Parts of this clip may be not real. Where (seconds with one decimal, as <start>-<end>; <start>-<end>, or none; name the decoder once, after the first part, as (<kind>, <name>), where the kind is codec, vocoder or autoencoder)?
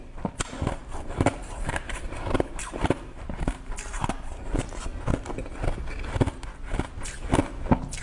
0.0-4.9 (vocoder, BigVGAN v2)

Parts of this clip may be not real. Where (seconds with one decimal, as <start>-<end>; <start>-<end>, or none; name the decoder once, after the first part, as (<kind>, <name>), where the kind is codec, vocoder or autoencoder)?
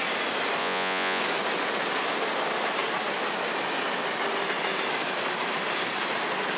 0.6-1.2 (vocoder, Vocos)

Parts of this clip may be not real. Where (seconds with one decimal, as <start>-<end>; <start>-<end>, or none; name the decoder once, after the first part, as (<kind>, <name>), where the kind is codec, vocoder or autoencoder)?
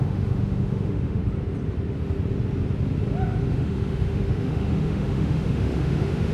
0.0-1.2 (autoencoder, DAC-VAE); 3.5-6.3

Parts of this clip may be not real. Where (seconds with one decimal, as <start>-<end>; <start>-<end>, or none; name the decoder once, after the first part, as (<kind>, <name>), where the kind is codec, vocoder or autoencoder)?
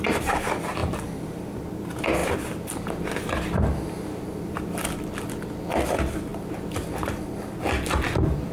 6.3-7.6 (vocoder, BigVGAN v2)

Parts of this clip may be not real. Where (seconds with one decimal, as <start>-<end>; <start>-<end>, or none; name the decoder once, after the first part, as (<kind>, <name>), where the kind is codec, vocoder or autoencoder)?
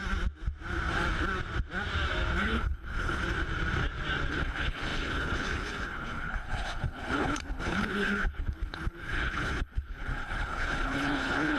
2.4-3.2 (codec, HILCodec); 4.3-11.6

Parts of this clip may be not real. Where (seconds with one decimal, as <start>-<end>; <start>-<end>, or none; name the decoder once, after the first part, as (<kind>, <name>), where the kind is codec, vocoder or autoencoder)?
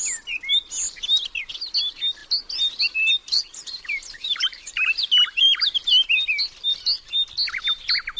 3.2-5.6 (vocoder, BigVGAN v2)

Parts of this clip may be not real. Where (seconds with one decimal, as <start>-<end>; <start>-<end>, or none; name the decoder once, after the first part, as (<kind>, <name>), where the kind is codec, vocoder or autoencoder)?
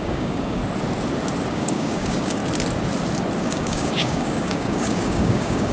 0.0-0.6 (codec, DAC); 1.5-2.4; 3.4-5.7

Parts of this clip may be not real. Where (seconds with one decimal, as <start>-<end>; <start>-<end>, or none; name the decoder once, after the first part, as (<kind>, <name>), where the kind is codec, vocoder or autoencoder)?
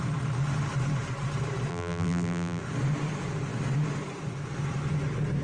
1.7-2.6 (vocoder, BigVGAN v2)